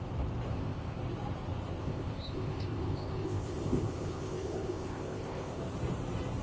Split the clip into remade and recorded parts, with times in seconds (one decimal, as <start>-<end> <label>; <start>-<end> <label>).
0.0-0.5 recorded; 0.5-1.0 remade; 1.0-1.8 recorded; 1.8-5.6 remade; 5.6-6.4 recorded

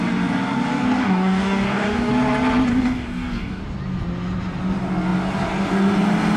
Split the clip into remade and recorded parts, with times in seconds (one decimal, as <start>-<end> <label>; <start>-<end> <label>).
0.0-1.0 recorded; 1.0-2.1 remade; 2.1-2.7 recorded; 2.7-3.6 remade; 3.6-6.4 recorded

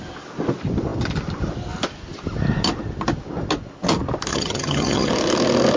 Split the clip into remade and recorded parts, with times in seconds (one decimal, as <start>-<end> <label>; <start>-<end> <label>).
0.0-4.3 recorded; 4.3-5.1 remade; 5.1-5.8 recorded

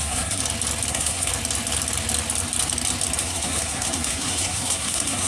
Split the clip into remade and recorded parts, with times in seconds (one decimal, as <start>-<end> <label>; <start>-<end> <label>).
0.0-0.4 remade; 0.4-0.9 recorded; 0.9-1.3 remade; 1.3-3.2 recorded; 3.2-5.3 remade

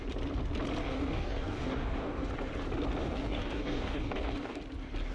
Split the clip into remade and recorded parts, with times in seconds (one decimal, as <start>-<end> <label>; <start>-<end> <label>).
0.0-0.8 recorded; 0.8-2.3 remade; 2.3-3.0 recorded; 3.0-4.6 remade; 4.6-5.1 recorded

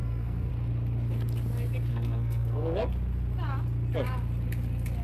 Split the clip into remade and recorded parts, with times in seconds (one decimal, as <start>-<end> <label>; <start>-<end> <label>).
0.0-0.5 remade; 0.5-1.9 recorded; 1.9-2.9 remade; 2.9-5.0 recorded

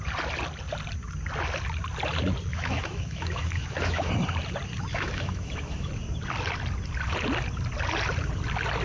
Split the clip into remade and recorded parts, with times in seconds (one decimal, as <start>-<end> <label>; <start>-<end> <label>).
0.0-2.5 recorded; 2.5-4.1 remade; 4.1-4.9 recorded; 4.9-5.9 remade; 5.9-8.8 recorded

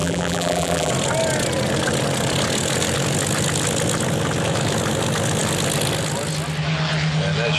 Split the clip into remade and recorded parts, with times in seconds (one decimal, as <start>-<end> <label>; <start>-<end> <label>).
0.0-0.9 remade; 0.9-7.6 recorded